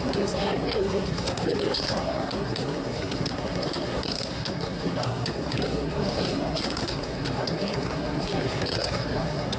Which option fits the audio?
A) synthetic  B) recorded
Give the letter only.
A